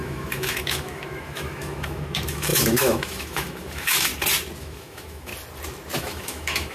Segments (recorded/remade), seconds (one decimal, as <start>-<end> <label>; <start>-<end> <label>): 0.0-4.1 remade; 4.1-4.6 recorded; 4.6-5.3 remade; 5.3-6.0 recorded; 6.0-6.7 remade